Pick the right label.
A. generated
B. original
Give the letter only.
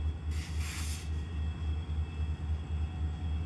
B